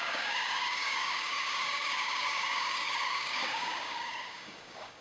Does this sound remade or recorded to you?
remade